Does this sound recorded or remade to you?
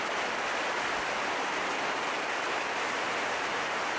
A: recorded